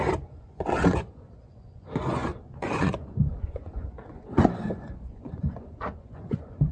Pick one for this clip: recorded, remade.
remade